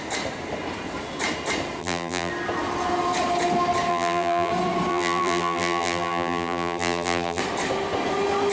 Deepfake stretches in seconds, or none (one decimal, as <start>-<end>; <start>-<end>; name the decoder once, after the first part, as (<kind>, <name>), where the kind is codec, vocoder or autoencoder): 1.8-2.3 (vocoder, BigVGAN v2); 3.9-4.5; 4.9-7.4